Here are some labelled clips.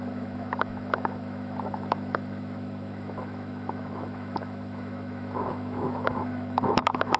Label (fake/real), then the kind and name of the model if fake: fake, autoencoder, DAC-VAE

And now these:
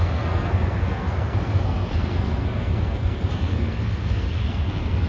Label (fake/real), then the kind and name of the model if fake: fake, codec, SNAC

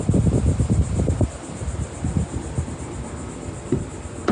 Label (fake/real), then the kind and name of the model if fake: real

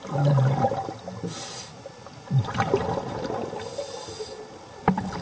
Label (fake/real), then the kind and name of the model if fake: real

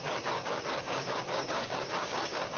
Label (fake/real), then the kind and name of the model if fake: fake, codec, DAC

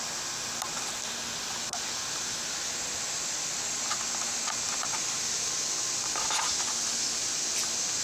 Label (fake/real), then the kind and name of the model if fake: real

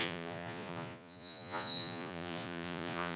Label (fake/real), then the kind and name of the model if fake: fake, vocoder, Vocos